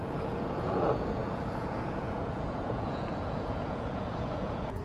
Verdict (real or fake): fake